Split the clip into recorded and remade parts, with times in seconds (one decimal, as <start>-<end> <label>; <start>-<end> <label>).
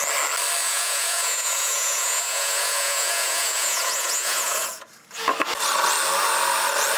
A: 0.0-0.6 recorded; 0.6-4.8 remade; 4.8-7.0 recorded